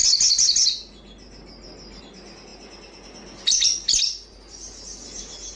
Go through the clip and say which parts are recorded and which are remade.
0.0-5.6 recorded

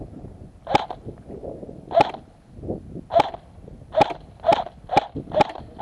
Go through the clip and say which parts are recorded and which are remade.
0.0-5.8 recorded